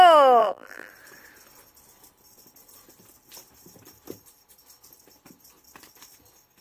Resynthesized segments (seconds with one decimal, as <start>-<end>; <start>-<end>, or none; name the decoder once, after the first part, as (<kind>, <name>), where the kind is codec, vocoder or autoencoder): 0.4-0.9 (vocoder, BigVGAN v2)